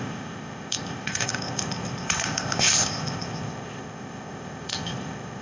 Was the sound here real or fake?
fake